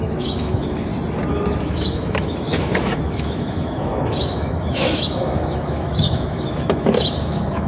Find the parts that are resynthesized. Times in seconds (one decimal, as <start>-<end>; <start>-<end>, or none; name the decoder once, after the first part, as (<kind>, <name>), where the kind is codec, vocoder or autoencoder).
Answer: 0.0-0.9 (autoencoder, DAC-VAE); 1.6-7.7